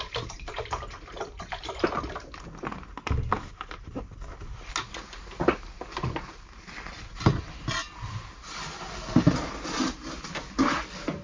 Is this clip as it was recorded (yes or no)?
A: yes